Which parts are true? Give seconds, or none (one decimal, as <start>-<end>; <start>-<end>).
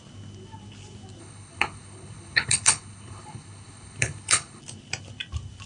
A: 0.0-1.2; 4.6-5.7